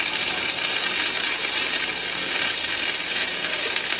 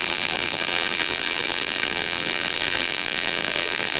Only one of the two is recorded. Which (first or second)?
first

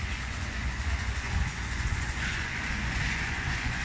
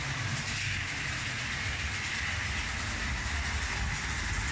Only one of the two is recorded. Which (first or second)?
second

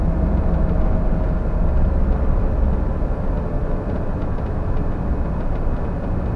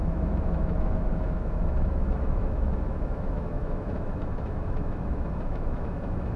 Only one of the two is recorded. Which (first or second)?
first